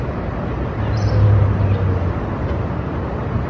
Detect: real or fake real